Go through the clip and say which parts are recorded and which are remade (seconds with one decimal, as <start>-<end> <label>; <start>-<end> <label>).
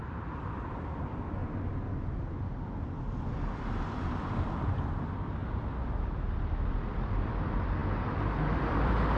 0.0-1.4 remade; 1.4-3.3 recorded; 3.3-5.4 remade; 5.4-6.0 recorded; 6.0-7.8 remade; 7.8-8.4 recorded; 8.4-9.2 remade